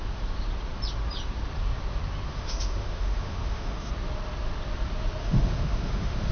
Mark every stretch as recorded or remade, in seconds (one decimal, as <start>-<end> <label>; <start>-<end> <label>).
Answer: 0.0-2.3 recorded; 2.3-3.9 remade; 3.9-5.2 recorded; 5.2-6.3 remade